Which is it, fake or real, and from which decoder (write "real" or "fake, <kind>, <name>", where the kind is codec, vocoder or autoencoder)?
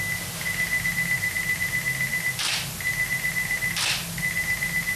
real